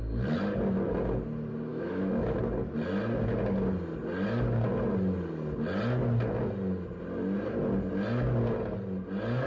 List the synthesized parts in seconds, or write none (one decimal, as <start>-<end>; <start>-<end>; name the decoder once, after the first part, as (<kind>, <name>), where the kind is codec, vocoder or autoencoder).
1.7-2.4 (autoencoder, DAC-VAE)